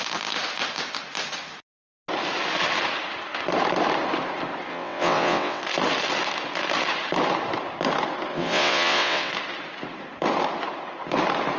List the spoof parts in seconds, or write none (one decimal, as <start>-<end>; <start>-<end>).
4.7-5.6; 8.3-9.3